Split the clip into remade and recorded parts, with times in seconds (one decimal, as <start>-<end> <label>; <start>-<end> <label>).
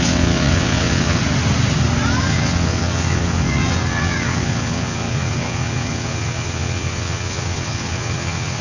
0.0-1.2 remade; 1.2-2.2 recorded; 2.2-8.6 remade